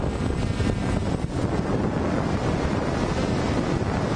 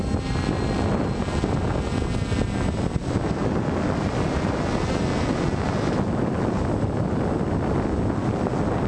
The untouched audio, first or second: second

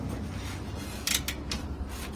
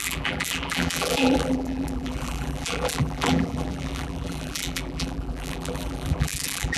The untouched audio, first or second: first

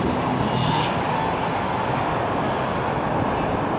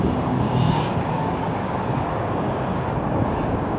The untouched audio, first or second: first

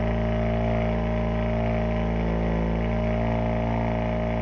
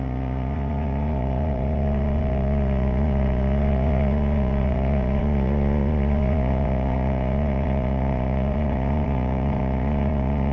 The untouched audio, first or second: first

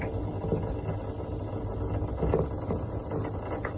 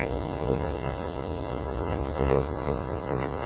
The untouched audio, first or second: first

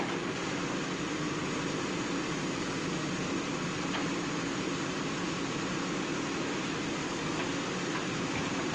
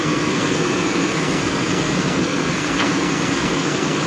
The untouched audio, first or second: first